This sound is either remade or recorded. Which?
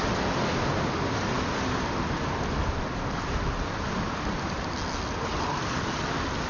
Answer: recorded